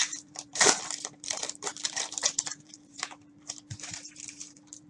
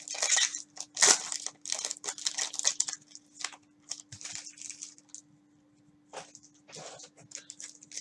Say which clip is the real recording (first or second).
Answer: second